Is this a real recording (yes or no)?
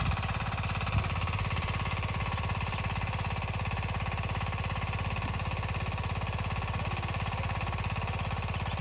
yes